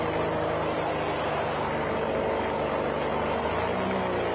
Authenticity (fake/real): real